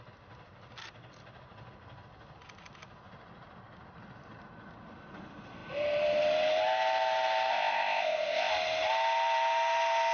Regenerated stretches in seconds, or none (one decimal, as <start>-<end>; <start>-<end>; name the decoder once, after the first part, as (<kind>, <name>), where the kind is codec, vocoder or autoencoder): 7.5-8.5 (codec, ZipCodec)